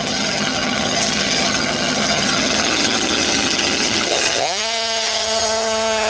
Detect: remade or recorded remade